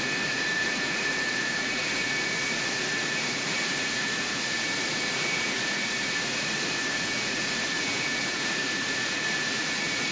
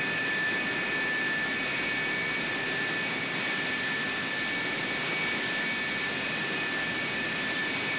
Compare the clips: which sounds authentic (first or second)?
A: second